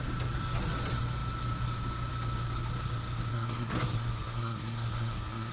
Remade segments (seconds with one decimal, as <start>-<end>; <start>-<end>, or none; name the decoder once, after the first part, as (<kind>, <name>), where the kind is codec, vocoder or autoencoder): 3.3-5.5 (codec, SNAC)